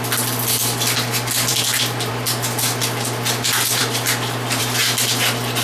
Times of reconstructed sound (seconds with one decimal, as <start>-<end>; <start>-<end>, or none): none